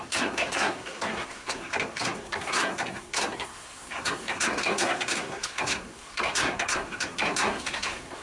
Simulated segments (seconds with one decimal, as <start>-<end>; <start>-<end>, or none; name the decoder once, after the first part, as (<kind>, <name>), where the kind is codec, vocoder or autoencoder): 0.0-8.2 (codec, SNAC)